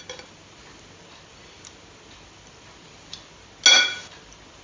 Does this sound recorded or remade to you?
recorded